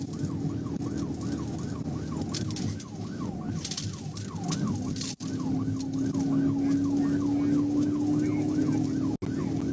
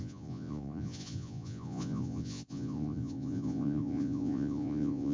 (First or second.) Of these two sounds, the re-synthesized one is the second